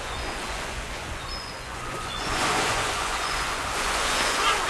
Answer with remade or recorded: remade